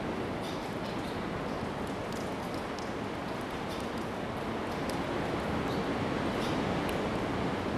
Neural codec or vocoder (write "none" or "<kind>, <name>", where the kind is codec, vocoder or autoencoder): none